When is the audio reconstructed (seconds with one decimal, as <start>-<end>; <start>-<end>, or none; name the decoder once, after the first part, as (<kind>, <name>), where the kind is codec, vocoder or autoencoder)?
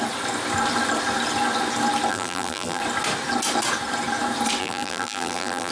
2.1-2.8 (vocoder, BigVGAN v2); 4.6-5.7